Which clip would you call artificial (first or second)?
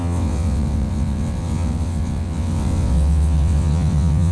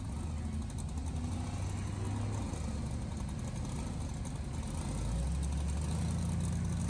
first